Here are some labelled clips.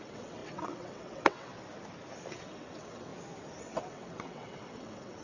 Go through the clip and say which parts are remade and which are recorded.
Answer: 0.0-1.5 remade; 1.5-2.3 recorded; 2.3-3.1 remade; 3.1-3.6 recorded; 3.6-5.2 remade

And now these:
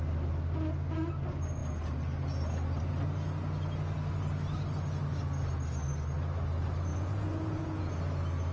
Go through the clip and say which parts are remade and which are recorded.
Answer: 0.0-6.9 recorded; 6.9-8.0 remade; 8.0-8.5 recorded